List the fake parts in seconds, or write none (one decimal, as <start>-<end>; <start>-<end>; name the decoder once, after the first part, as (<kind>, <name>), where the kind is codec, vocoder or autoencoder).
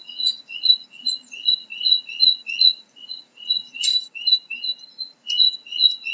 0.0-3.9 (vocoder, Vocos); 5.0-6.1